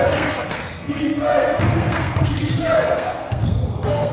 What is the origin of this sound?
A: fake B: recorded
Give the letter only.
A